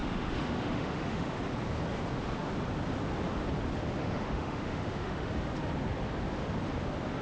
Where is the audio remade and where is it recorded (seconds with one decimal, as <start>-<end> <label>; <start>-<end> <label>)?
0.0-1.4 remade; 1.4-4.0 recorded; 4.0-5.3 remade; 5.3-7.2 recorded

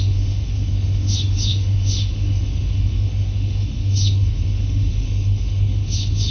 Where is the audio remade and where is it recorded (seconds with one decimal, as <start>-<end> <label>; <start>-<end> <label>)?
0.0-6.3 remade

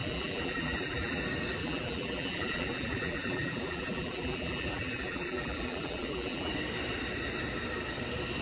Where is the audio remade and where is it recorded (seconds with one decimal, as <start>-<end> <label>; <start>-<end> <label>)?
0.0-1.2 remade; 1.2-1.6 recorded; 1.6-6.5 remade; 6.5-8.4 recorded

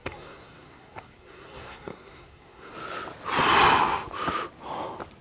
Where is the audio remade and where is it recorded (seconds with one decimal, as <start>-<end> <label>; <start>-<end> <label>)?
0.0-2.7 remade; 2.7-5.2 recorded

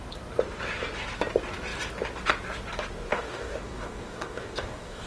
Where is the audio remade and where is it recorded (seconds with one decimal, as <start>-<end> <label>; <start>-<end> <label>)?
0.0-3.1 recorded; 3.1-5.1 remade

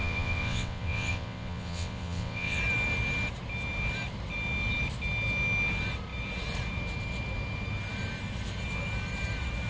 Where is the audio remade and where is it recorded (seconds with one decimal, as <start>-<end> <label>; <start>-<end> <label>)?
0.0-2.6 remade; 2.6-9.7 recorded